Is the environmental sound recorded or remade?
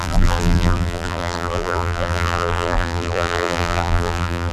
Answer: remade